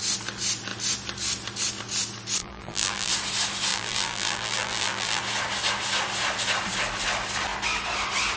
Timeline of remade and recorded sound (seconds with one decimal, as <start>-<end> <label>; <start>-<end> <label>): 0.0-2.4 recorded; 2.4-3.1 remade; 3.1-3.7 recorded; 3.7-5.2 remade; 5.2-8.4 recorded